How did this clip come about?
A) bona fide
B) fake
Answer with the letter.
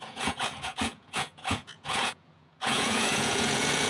B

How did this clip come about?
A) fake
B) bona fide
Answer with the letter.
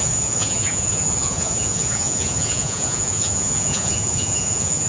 A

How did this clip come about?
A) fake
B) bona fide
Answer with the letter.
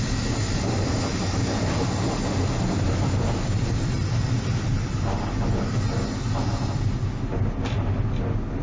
B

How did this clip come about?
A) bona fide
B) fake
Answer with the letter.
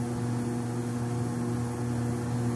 A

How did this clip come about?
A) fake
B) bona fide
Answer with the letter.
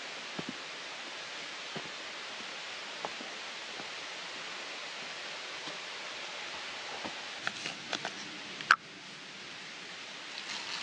B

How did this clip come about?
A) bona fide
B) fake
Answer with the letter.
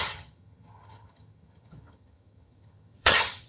B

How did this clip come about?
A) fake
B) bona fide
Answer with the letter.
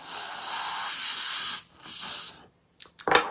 B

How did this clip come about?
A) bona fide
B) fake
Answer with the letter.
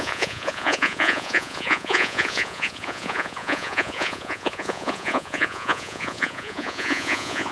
B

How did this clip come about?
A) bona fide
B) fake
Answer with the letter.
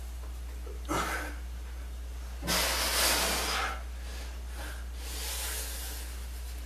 A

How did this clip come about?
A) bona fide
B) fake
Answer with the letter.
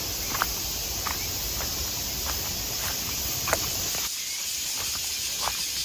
A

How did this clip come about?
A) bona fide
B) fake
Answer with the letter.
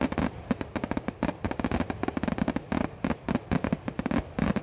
A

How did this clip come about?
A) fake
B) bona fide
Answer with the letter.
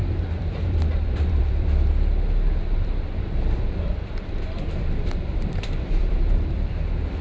A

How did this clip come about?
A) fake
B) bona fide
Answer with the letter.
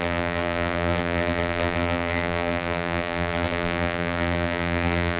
A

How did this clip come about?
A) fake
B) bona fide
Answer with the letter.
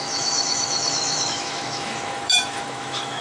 A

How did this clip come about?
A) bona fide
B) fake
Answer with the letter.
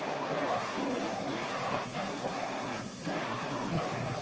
B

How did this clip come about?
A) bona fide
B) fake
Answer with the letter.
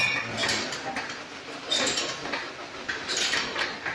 A